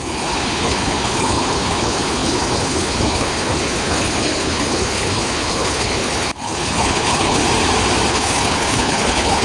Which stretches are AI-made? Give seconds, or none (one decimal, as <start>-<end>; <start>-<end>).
0.0-7.4; 8.1-9.4